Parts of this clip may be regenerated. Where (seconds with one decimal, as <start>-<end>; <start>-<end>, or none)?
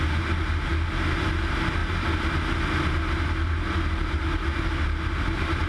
none